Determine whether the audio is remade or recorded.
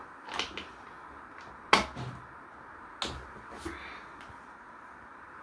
recorded